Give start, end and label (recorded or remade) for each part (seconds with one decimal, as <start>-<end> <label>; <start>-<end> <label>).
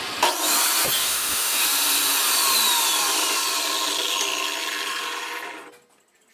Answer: 0.0-1.0 recorded; 1.0-1.6 remade; 1.6-6.3 recorded